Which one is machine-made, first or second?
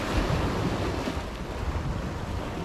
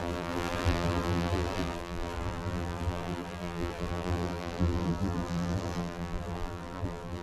second